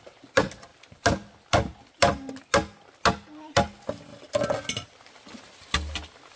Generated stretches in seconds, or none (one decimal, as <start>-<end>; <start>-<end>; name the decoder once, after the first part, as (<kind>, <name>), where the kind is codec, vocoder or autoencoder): none